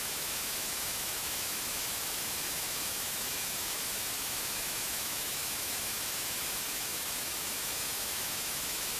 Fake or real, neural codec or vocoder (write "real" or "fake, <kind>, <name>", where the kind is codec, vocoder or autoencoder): fake, autoencoder, DAC-VAE